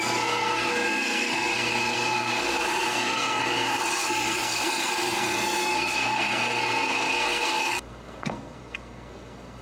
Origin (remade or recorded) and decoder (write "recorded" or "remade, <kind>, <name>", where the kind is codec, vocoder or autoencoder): remade, codec, SNAC